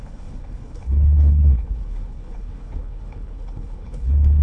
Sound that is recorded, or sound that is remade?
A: remade